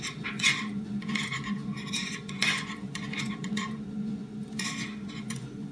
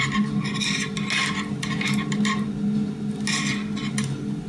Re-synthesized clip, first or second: first